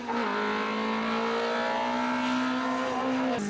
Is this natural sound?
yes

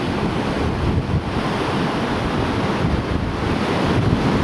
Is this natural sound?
yes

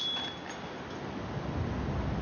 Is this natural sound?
yes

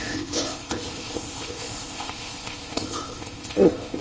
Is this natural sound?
no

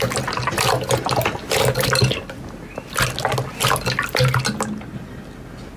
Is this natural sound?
yes